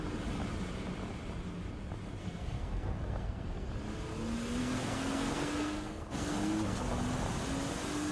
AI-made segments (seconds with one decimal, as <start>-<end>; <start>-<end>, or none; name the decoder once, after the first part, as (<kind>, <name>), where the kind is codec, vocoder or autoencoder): 2.2-3.7 (codec, SNAC); 4.6-6.9

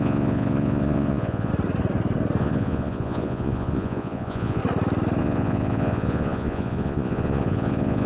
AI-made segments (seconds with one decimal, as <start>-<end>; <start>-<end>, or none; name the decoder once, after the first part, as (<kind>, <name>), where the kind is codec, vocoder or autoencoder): 0.0-1.5 (vocoder, Vocos); 2.4-4.6; 5.2-8.1

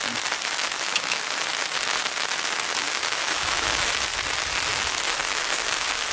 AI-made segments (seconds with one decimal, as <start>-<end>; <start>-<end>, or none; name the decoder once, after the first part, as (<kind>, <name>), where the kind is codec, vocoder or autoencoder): 0.6-1.5 (autoencoder, DAC-VAE); 2.8-4.2; 4.7-6.1

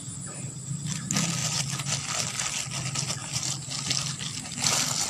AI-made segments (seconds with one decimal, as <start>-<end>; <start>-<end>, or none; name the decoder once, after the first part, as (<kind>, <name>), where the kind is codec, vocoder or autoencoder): 1.4-2.3 (vocoder, BigVGAN v2); 3.2-5.1

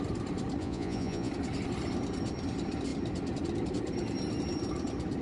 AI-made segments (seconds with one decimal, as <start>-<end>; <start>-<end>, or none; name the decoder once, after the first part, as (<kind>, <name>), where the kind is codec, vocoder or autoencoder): 0.6-1.3 (vocoder, Vocos)

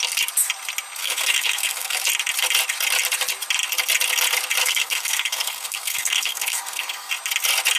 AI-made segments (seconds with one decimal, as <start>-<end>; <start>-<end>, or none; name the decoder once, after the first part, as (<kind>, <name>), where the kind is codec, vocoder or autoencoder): 1.0-2.0 (codec, SNAC); 4.6-7.1

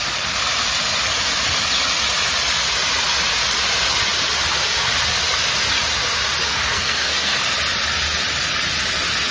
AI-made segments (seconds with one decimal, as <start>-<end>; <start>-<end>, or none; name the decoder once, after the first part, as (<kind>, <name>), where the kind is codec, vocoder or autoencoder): 6.5-7.4 (codec, SNAC)

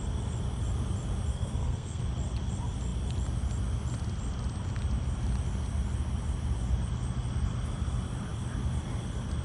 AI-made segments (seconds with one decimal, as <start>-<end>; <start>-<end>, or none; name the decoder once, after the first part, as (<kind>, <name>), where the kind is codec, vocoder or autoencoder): 1.3-2.0 (codec, SNAC)